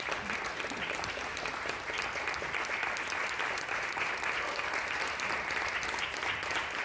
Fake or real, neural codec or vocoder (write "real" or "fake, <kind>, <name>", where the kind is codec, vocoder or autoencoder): real